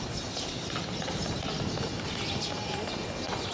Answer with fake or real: real